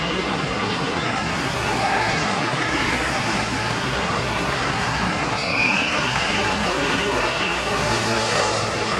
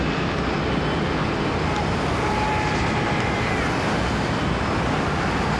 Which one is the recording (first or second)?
second